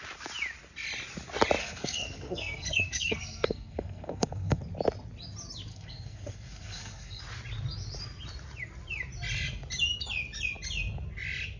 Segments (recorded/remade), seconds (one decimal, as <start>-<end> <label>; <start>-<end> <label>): 0.0-1.6 recorded; 1.6-4.6 remade; 4.6-5.7 recorded; 5.7-7.2 remade; 7.2-11.6 recorded